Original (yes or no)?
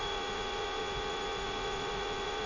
no